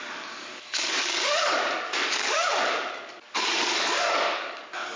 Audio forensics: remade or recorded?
remade